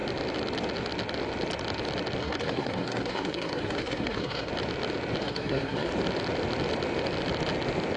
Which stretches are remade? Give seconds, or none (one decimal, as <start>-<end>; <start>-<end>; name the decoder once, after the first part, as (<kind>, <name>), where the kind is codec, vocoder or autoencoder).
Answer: 2.2-4.5 (codec, SNAC); 5.2-5.9